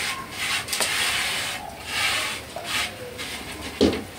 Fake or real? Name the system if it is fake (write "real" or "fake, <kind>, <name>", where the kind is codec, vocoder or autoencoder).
real